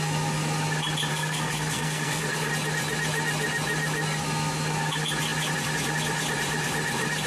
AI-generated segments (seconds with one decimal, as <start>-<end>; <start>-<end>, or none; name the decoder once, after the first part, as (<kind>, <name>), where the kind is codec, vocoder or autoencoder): 1.1-2.5 (codec, SNAC)